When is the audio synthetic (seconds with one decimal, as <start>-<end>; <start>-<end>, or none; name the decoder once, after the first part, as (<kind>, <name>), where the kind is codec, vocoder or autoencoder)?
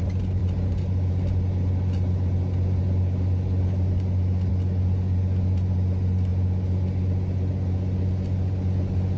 none